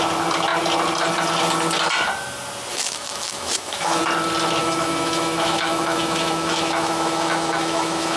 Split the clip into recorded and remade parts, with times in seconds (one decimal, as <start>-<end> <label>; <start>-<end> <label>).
0.0-2.7 recorded; 2.7-4.0 remade; 4.0-4.6 recorded; 4.6-8.2 remade